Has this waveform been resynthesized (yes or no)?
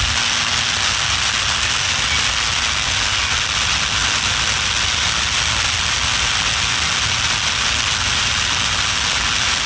no